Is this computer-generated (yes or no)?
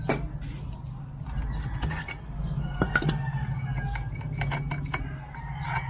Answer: no